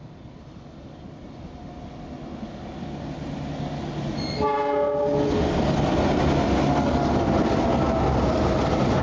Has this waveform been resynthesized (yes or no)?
no